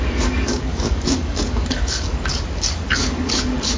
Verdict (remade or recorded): remade